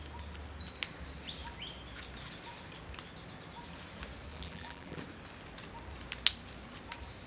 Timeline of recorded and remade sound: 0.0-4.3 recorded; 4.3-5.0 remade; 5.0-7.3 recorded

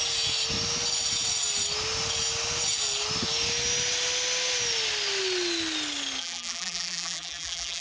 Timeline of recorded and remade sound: 0.0-6.2 recorded; 6.2-7.8 remade

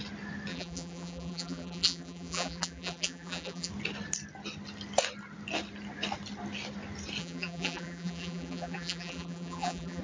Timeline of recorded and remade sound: 0.0-0.5 recorded; 0.5-3.7 remade; 3.7-7.2 recorded; 7.2-10.0 remade

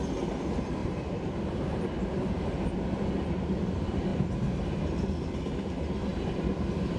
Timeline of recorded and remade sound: 0.0-0.8 recorded; 0.8-2.8 remade; 2.8-4.1 recorded; 4.1-4.8 remade; 4.8-7.0 recorded

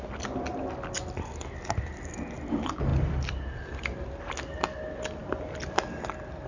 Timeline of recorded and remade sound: 0.0-2.9 recorded; 2.9-3.8 remade; 3.8-6.5 recorded

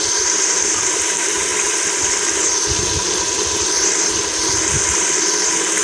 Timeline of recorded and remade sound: 0.0-1.5 remade; 1.5-5.0 recorded; 5.0-5.8 remade